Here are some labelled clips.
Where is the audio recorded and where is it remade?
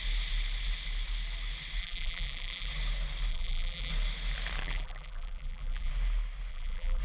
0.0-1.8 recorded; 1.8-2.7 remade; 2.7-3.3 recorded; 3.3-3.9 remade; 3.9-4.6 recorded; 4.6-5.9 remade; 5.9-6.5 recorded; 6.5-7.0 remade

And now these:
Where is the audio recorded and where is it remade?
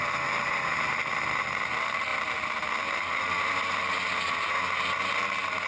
0.0-2.1 recorded; 2.1-2.7 remade; 2.7-5.7 recorded